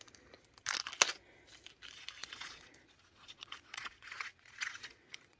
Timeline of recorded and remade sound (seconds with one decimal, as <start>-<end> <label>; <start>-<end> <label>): 0.0-2.2 recorded; 2.2-5.4 remade